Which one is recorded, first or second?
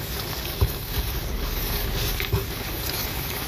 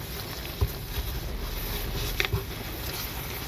second